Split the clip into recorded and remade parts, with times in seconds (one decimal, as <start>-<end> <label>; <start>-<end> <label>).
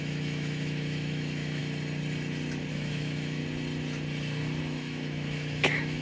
0.0-1.6 remade; 1.6-2.7 recorded; 2.7-3.4 remade; 3.4-4.6 recorded; 4.6-6.0 remade